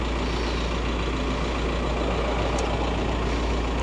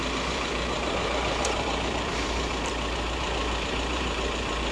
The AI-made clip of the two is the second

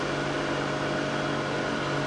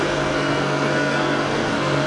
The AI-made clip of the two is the second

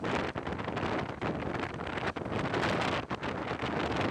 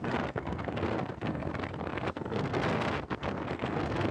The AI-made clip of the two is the second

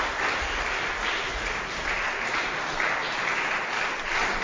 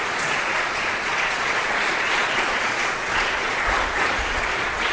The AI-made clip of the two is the second